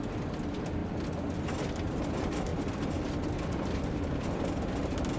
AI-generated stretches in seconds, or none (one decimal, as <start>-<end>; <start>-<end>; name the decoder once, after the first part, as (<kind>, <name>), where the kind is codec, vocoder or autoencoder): none